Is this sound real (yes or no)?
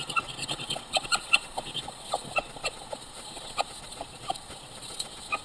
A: no